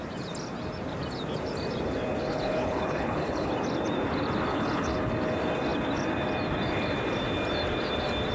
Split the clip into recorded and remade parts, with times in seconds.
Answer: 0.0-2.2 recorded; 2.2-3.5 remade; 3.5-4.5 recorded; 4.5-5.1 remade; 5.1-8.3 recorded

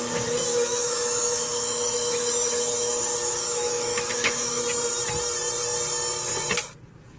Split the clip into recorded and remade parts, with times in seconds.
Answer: 0.0-0.5 recorded; 0.5-4.6 remade; 4.6-7.2 recorded

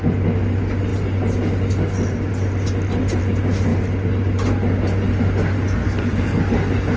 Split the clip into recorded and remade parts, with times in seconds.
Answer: 0.0-5.8 recorded; 5.8-6.4 remade; 6.4-7.0 recorded

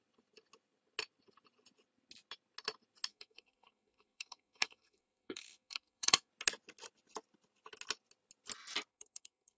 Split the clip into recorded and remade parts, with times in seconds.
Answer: 0.0-3.1 recorded; 3.1-6.3 remade; 6.3-8.9 recorded; 8.9-9.6 remade

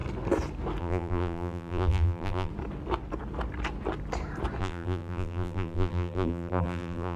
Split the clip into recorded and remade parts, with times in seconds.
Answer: 0.0-0.8 recorded; 0.8-2.5 remade; 2.5-4.6 recorded; 4.6-7.2 remade

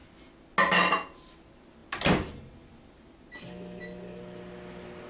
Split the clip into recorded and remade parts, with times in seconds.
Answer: 0.0-5.1 recorded

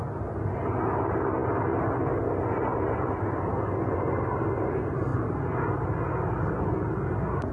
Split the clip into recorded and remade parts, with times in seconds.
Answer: 0.0-7.5 recorded